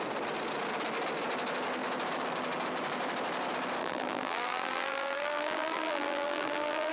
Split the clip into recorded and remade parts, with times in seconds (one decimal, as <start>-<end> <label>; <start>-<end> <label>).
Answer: 0.0-3.8 recorded; 3.8-6.9 remade